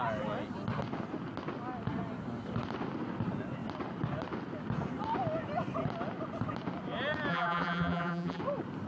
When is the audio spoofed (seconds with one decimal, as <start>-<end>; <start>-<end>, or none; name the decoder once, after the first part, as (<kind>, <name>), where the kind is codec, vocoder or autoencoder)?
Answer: 7.3-8.4 (vocoder, BigVGAN v2)